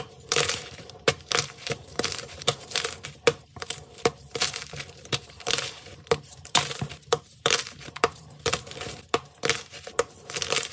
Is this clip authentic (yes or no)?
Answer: no